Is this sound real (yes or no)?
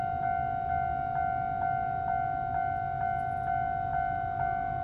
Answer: yes